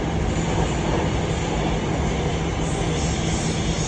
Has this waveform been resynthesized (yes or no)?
no